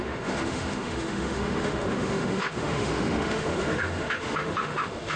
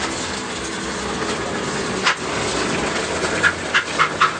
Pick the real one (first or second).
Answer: second